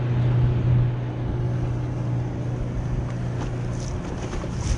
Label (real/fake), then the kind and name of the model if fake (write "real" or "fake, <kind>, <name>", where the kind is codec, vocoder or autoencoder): real